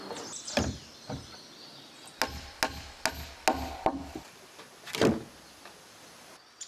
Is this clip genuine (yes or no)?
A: yes